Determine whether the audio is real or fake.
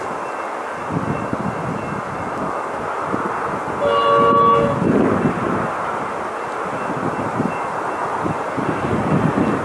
real